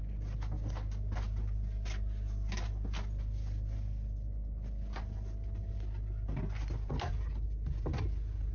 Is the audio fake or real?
real